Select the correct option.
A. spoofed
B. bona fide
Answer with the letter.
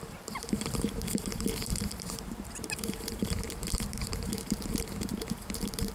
A